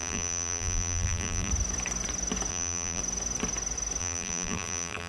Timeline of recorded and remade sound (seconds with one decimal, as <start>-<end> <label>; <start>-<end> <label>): 0.0-1.5 remade; 1.5-2.5 recorded; 2.5-3.0 remade; 3.0-4.0 recorded; 4.0-5.1 remade